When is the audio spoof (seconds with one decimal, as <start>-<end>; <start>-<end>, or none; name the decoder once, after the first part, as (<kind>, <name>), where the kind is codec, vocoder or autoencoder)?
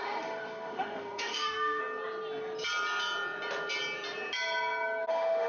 0.0-1.8 (autoencoder, DAC-VAE); 5.1-5.5